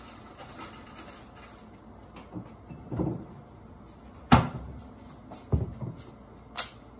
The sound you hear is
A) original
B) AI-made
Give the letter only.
A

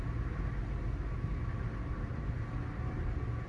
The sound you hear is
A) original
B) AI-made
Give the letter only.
A